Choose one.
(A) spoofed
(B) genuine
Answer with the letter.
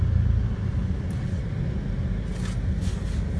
B